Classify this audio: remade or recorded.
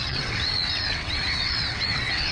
remade